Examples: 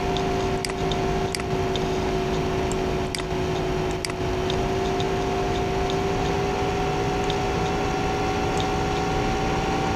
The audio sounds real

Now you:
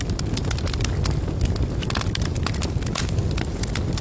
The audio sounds real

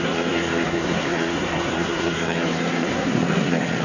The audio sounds fake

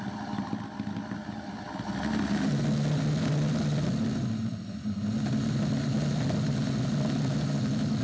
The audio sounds real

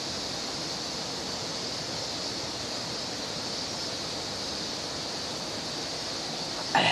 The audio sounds real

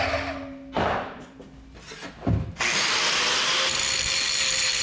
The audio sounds real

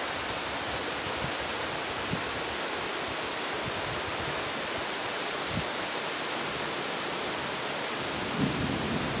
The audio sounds real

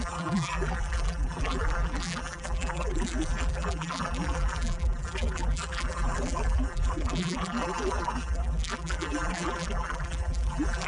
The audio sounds fake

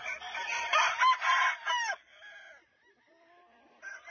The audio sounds real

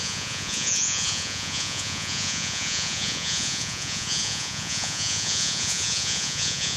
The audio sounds fake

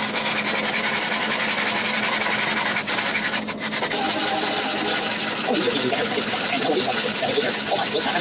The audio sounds fake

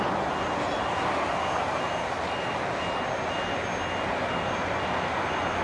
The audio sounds real